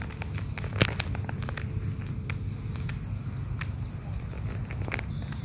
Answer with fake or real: real